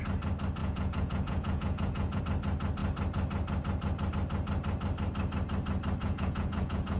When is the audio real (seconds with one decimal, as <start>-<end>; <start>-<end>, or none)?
0.0-0.6; 2.2-6.0